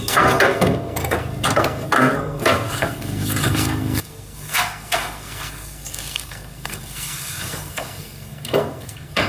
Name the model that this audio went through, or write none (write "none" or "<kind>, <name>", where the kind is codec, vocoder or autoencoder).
codec, SNAC